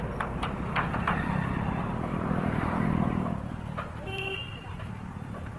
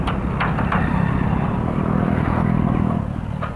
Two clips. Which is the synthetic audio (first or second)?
first